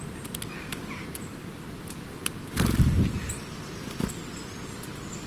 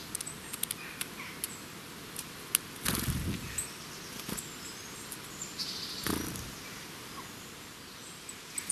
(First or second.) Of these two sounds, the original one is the second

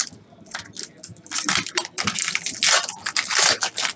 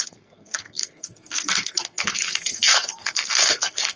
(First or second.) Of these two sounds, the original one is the first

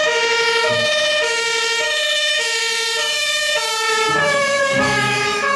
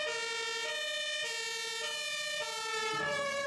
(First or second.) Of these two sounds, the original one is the second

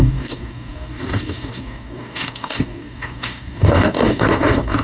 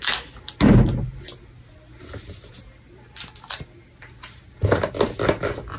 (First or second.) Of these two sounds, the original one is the second